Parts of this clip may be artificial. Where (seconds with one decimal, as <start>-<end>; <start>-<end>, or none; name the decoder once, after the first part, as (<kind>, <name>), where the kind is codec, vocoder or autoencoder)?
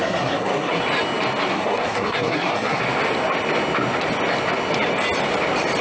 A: 0.0-0.8 (codec, SNAC); 1.5-2.8